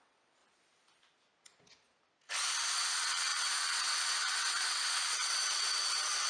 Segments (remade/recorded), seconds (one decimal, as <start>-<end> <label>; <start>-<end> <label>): 0.0-0.4 remade; 0.4-2.7 recorded; 2.7-6.3 remade

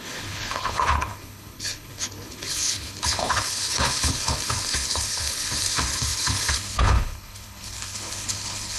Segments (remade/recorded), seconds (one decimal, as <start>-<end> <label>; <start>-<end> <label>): 0.0-8.8 remade

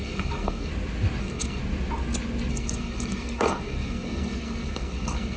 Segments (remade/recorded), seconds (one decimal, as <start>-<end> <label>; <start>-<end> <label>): 0.0-0.7 remade; 0.7-1.2 recorded; 1.2-1.6 remade; 1.6-2.5 recorded; 2.5-5.4 remade